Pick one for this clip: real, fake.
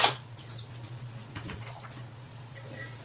fake